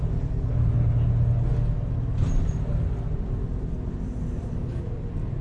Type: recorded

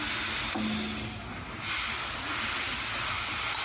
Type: recorded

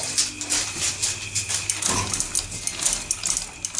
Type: recorded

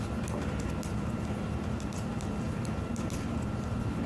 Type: recorded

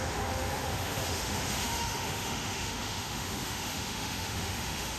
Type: remade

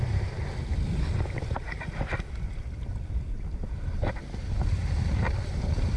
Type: recorded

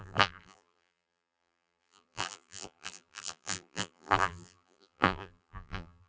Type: remade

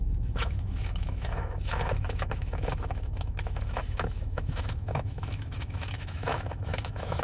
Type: remade